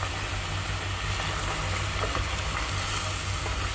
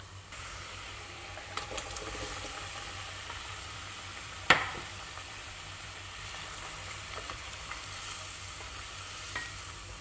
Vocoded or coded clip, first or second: second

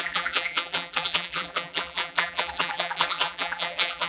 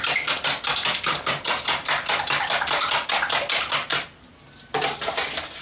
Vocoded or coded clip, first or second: first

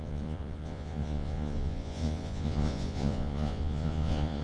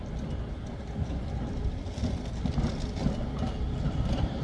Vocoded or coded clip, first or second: first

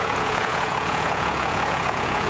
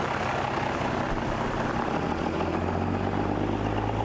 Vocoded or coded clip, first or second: first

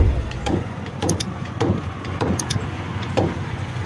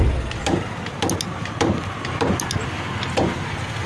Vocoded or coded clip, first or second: first